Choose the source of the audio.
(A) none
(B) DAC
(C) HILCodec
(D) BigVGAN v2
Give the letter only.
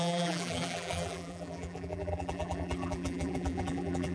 D